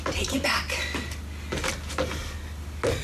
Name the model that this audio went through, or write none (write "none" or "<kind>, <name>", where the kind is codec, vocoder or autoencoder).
none